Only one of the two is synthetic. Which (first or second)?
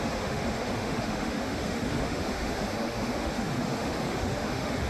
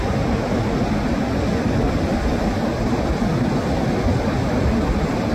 first